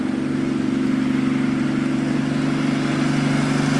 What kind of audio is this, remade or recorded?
recorded